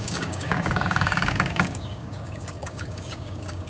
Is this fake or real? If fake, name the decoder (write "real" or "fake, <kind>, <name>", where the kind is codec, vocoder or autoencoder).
fake, codec, DAC